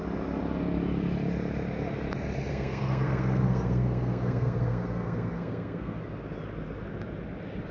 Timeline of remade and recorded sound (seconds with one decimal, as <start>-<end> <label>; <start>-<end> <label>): 0.0-2.5 recorded; 2.5-6.0 remade; 6.0-7.7 recorded